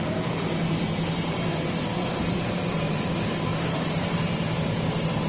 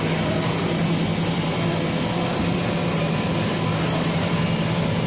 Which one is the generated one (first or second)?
first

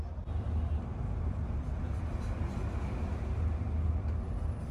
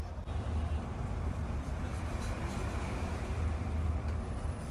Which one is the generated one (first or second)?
second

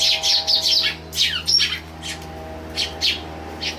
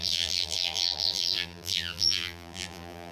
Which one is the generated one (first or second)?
second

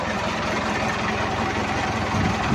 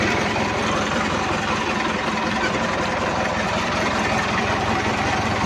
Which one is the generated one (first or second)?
second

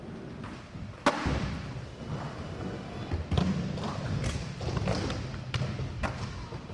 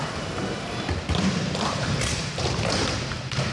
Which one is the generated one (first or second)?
second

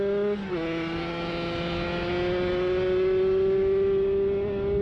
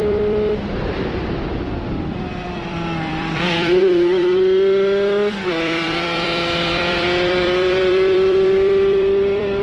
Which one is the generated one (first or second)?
second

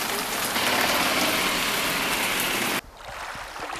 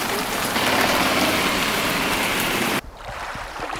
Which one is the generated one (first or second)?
second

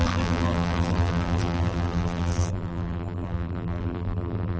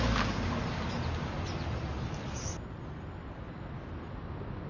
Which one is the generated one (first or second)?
first